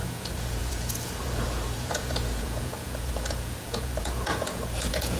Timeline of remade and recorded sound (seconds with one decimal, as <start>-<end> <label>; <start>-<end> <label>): 0.0-5.2 remade

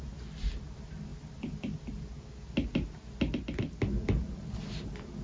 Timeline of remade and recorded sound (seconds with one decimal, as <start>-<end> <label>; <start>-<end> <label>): 0.0-5.2 recorded

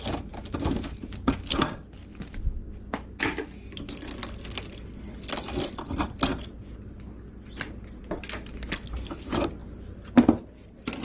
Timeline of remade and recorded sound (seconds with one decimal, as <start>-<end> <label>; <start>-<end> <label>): 0.0-11.0 recorded

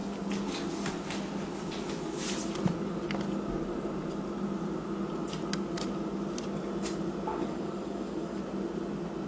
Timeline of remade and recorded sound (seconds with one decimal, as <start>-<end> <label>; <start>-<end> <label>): 0.0-7.3 recorded; 7.3-8.4 remade; 8.4-9.3 recorded